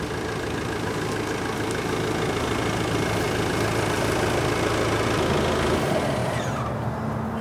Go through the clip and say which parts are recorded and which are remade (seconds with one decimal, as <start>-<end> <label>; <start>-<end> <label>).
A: 0.0-7.4 recorded